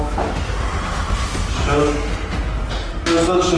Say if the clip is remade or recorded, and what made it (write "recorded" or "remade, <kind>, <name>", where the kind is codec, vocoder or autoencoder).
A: recorded